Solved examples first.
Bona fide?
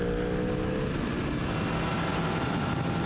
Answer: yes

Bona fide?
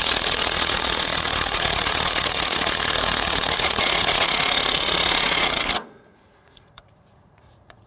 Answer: no